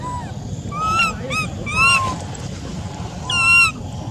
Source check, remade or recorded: recorded